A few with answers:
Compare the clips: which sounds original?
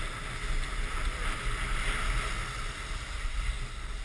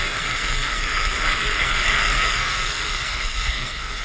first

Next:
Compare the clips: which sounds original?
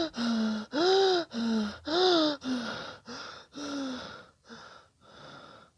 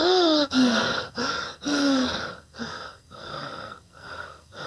first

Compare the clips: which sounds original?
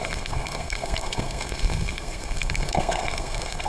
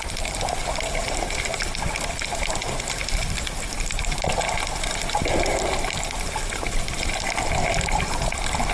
second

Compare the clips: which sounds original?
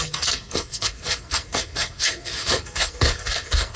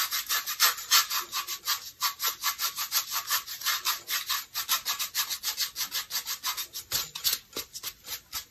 second